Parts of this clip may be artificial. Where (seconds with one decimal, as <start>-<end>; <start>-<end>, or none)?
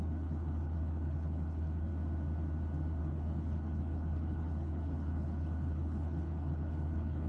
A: 0.0-1.9; 3.0-7.3